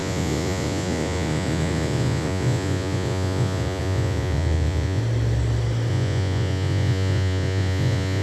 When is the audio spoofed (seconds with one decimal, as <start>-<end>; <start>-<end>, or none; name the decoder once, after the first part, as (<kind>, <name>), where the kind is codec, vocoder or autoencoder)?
0.0-5.0 (vocoder, Vocos); 5.9-8.2